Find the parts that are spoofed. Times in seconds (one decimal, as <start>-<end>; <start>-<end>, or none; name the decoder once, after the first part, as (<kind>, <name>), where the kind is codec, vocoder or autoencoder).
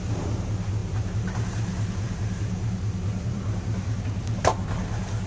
0.0-4.5 (vocoder, BigVGAN v2)